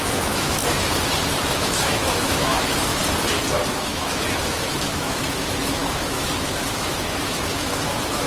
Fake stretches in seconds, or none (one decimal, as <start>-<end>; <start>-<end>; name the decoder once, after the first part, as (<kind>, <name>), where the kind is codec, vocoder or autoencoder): 0.0-0.6 (autoencoder, DAC-VAE); 1.4-3.0; 3.7-8.3